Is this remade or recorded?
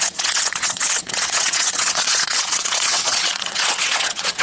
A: remade